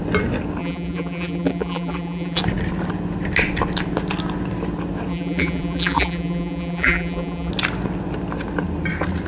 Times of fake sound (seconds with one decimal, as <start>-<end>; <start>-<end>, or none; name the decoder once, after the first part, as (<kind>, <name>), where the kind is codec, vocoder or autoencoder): 0.6-2.4 (vocoder, BigVGAN v2); 5.1-7.5